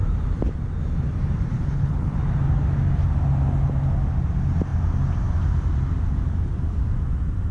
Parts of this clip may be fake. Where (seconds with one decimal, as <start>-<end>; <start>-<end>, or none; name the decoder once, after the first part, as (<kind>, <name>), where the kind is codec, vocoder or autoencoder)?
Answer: 1.5-2.2 (codec, HILCodec)